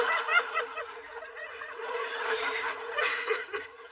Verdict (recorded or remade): remade